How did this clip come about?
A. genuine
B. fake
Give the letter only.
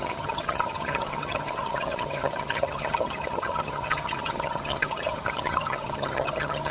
B